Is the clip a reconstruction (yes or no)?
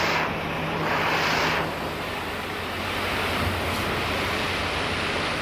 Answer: no